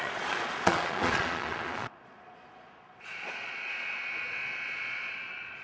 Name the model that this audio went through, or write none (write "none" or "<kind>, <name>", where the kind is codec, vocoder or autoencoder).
vocoder, Vocos